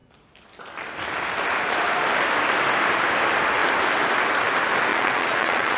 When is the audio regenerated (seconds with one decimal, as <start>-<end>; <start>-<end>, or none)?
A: 4.9-5.8